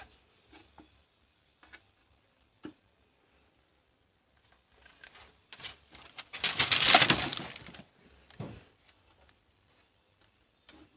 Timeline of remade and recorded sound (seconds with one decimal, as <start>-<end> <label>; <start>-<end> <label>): 0.0-11.0 recorded